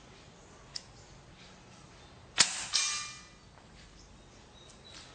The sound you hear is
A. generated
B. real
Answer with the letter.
B